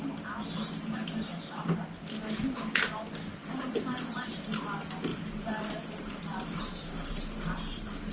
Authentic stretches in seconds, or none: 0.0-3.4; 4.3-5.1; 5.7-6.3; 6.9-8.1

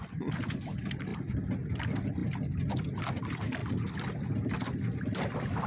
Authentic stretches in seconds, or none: 0.0-5.7

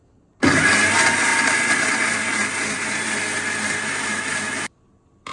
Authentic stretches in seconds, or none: 0.0-1.3; 3.2-5.3

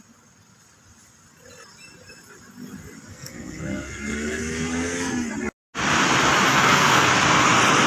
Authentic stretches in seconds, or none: 0.0-3.1; 5.3-6.5; 7.1-7.9

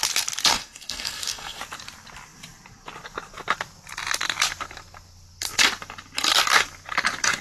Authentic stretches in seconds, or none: 0.0-0.5; 1.6-7.4